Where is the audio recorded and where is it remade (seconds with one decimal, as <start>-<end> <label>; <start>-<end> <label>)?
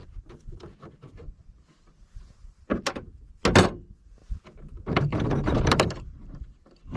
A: 0.0-0.9 remade; 0.9-2.7 recorded; 2.7-3.3 remade; 3.3-4.2 recorded; 4.2-6.5 remade; 6.5-7.0 recorded